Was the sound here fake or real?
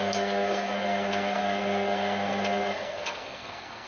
fake